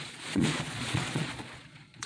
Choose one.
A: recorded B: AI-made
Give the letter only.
B